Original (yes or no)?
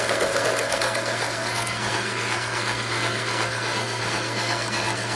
no